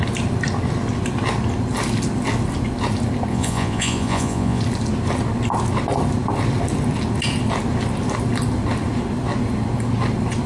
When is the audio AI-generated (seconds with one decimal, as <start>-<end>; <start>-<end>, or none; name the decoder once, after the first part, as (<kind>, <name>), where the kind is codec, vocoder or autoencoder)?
3.3-4.6 (vocoder, Vocos)